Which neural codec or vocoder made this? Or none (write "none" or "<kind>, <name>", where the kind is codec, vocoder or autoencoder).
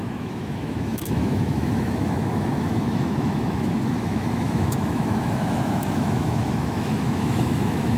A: autoencoder, DAC-VAE